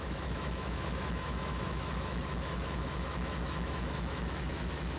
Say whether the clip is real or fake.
fake